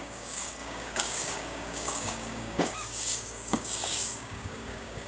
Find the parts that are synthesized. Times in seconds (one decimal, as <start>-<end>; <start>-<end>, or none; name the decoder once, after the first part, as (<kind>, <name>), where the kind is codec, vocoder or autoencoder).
0.0-5.1 (codec, DAC)